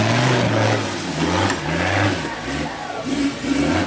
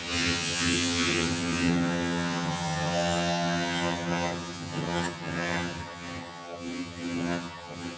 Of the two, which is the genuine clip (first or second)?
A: first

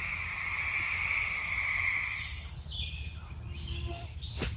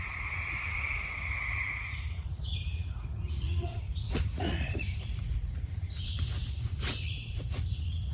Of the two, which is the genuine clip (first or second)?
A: first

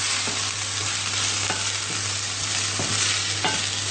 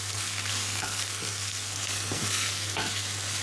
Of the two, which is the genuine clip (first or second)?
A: first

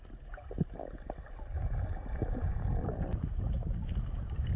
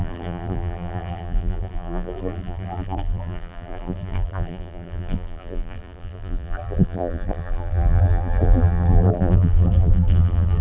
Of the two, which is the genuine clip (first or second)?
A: first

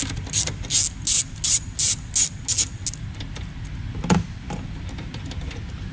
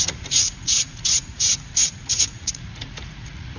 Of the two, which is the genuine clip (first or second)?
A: first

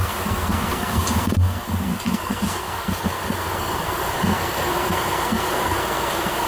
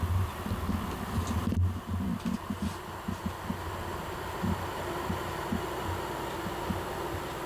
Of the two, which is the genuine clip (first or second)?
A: second